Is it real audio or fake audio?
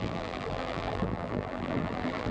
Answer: fake